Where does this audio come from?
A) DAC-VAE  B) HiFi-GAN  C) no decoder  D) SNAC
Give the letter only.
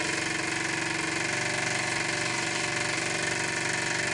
C